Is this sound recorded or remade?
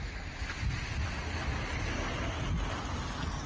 recorded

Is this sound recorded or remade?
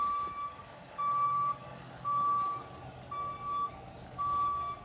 remade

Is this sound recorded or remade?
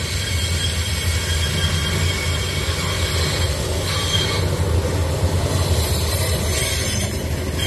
recorded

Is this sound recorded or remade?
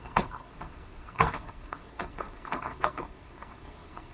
remade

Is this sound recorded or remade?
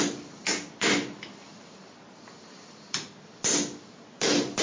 recorded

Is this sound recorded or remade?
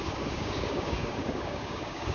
remade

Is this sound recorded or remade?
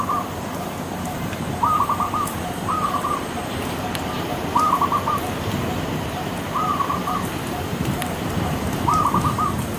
remade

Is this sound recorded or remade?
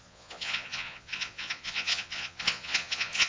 remade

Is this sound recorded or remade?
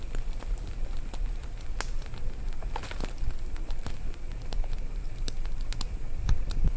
recorded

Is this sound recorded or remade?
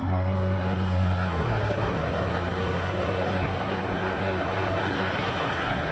remade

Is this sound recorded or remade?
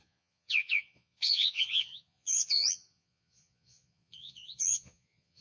remade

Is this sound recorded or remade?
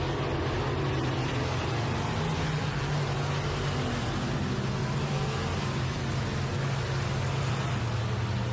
recorded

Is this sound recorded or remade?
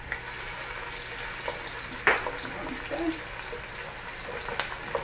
recorded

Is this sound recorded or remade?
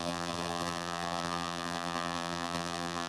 remade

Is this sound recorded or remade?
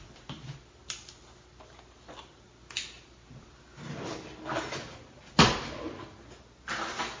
recorded